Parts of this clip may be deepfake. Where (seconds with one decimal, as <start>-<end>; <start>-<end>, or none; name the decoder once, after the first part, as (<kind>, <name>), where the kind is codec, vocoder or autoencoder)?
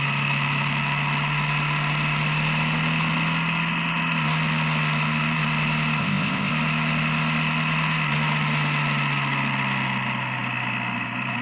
6.0-6.5 (codec, ZipCodec)